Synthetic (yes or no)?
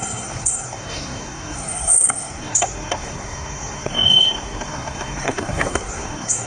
yes